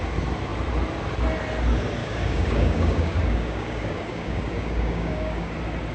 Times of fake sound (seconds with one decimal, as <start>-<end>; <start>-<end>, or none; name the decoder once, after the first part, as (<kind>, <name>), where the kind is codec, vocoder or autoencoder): 2.0-5.5 (codec, DAC)